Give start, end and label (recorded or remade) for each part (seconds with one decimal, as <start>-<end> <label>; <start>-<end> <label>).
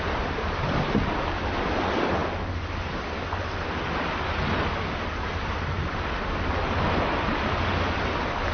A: 0.0-8.5 recorded